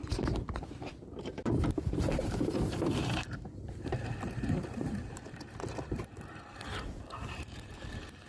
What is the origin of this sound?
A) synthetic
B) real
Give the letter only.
A